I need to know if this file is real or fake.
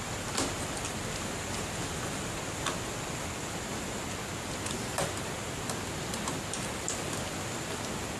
real